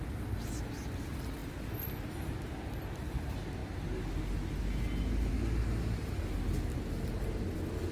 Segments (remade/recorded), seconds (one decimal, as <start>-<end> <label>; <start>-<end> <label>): 0.0-7.9 recorded